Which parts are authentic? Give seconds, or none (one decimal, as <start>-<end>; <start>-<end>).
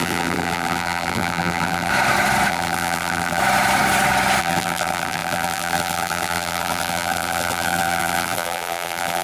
1.9-2.5; 3.4-4.4